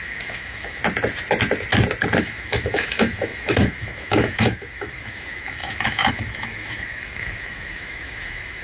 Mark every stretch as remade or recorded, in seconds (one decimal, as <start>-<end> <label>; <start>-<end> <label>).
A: 0.0-0.8 remade; 0.8-2.2 recorded; 2.2-8.6 remade